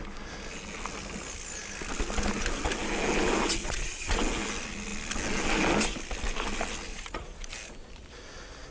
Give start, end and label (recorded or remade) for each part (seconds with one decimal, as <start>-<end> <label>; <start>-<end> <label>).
0.0-3.6 recorded; 3.6-4.2 remade; 4.2-6.9 recorded; 6.9-7.5 remade; 7.5-8.7 recorded